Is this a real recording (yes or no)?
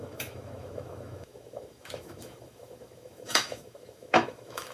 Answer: no